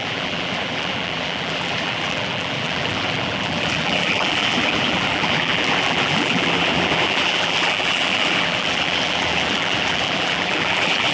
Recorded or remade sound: remade